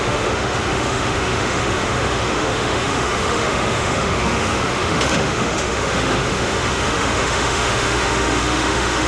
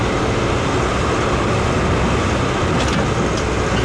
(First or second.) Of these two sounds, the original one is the second